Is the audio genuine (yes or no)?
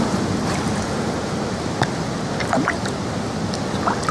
yes